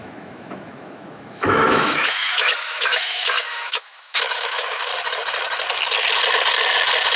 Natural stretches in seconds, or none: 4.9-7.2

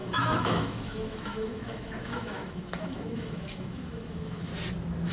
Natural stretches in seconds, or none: 4.5-5.1

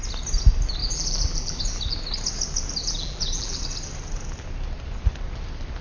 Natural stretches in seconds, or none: 0.0-0.8; 1.6-2.8; 3.6-5.8

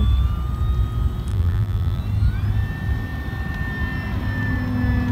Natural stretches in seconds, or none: 0.0-1.3; 2.0-5.1

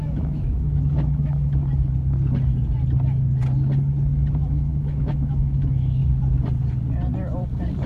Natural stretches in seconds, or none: 1.6-4.3; 6.0-7.9